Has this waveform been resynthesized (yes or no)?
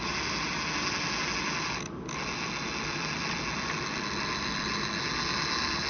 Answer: no